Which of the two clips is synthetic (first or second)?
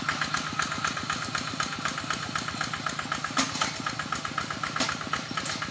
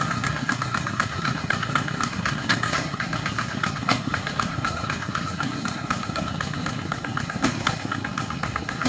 second